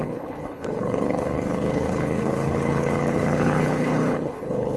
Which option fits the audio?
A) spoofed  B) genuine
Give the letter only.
A